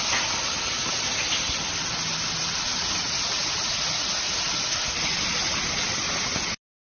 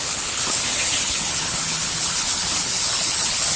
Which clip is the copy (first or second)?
second